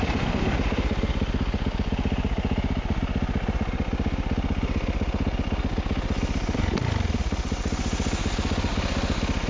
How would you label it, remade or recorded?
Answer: recorded